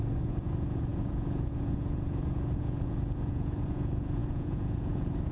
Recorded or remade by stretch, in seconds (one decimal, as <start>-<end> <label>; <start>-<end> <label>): 0.0-5.3 remade